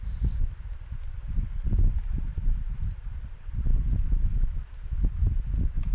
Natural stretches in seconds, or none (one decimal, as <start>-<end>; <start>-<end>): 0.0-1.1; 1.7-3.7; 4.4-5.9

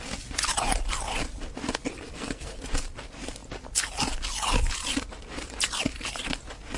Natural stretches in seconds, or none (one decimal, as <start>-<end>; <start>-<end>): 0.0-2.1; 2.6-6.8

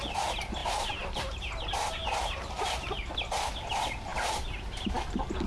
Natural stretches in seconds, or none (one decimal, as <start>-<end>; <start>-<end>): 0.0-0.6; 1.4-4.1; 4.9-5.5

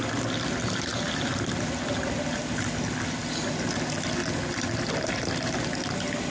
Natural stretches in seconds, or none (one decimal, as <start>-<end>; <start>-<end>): 0.0-0.9; 1.5-6.3

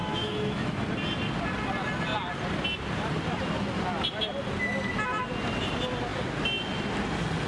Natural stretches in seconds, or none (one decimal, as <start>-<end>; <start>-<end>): 0.8-7.5

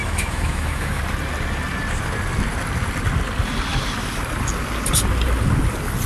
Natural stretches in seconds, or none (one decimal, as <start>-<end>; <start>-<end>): 1.0-6.1